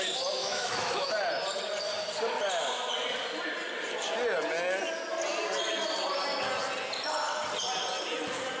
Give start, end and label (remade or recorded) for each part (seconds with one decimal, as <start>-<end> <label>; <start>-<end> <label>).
0.0-0.4 recorded; 0.4-1.1 remade; 1.1-8.6 recorded